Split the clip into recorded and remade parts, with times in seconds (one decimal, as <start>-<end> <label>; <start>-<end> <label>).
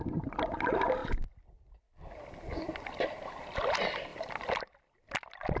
0.0-1.0 recorded; 1.0-1.6 remade; 1.6-4.1 recorded; 4.1-4.7 remade; 4.7-5.6 recorded